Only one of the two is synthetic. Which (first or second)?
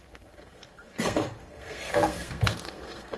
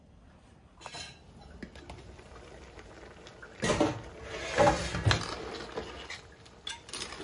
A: first